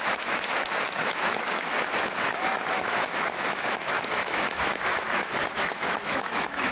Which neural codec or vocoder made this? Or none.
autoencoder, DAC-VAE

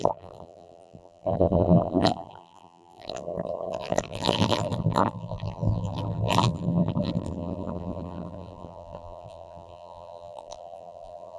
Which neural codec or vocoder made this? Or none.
vocoder, BigVGAN v2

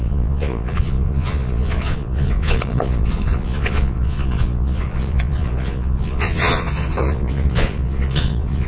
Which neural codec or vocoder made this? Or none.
vocoder, Vocos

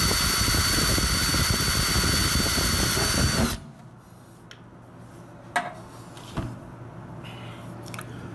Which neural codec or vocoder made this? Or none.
none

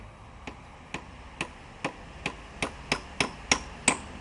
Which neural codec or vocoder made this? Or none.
none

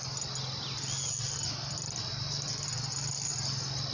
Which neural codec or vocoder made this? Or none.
none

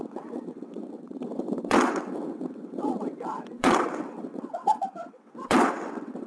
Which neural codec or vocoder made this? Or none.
vocoder, WaveNeXt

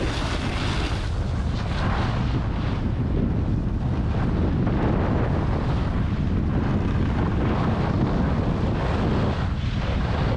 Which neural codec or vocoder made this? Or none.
none